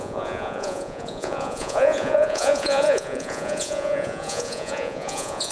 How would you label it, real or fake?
fake